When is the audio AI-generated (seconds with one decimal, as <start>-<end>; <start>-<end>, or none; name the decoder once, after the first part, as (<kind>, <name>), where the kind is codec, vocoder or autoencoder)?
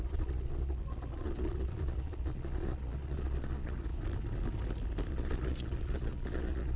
0.0-3.9 (vocoder, Vocos); 5.1-6.8